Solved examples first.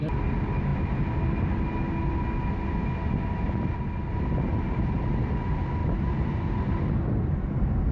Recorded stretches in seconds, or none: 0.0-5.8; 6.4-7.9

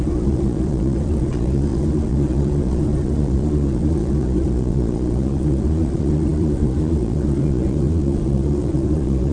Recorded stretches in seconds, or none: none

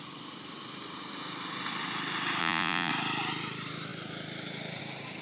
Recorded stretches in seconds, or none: 0.0-2.4; 2.9-5.2

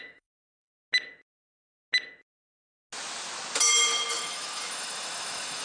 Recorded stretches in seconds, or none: 0.7-4.1